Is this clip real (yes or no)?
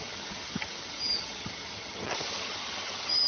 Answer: no